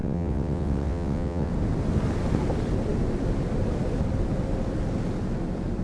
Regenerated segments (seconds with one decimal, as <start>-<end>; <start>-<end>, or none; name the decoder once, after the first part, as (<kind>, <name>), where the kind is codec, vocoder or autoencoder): 0.0-1.5 (vocoder, WaveNeXt)